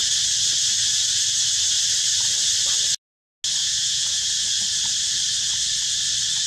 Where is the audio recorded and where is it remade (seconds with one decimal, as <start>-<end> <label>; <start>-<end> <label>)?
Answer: 0.0-3.6 recorded; 3.6-4.3 remade; 4.3-6.5 recorded